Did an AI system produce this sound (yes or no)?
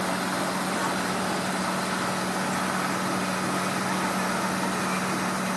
no